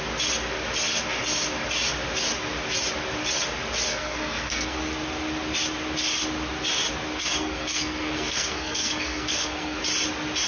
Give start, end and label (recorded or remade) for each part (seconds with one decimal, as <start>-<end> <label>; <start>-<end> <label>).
0.0-3.9 recorded; 3.9-4.8 remade; 4.8-7.2 recorded; 7.2-9.8 remade; 9.8-10.5 recorded